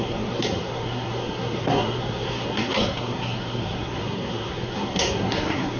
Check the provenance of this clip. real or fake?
fake